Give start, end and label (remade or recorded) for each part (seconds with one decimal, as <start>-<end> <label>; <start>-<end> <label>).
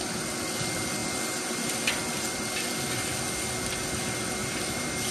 0.0-4.4 recorded; 4.4-5.1 remade